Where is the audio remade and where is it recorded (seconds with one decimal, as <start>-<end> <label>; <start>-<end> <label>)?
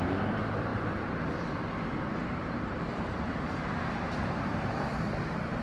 0.0-0.7 recorded; 0.7-1.4 remade; 1.4-2.3 recorded; 2.3-5.6 remade